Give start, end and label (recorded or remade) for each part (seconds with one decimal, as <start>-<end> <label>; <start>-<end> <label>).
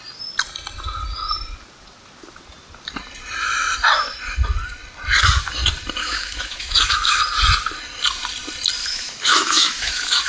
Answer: 0.0-6.0 recorded; 6.0-7.2 remade; 7.2-8.8 recorded; 8.8-10.3 remade